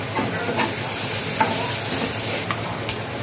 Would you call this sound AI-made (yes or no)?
no